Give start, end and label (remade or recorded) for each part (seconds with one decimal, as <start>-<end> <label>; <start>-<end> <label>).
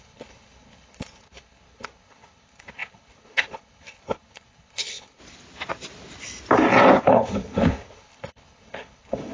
0.0-5.2 remade; 5.2-7.0 recorded; 7.0-9.3 remade